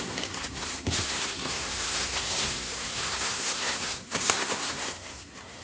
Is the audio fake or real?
fake